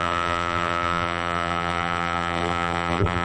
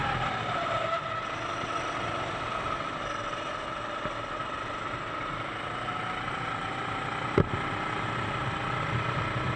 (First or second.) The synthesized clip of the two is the first